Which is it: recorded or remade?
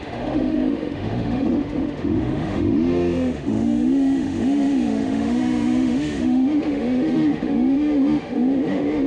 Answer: remade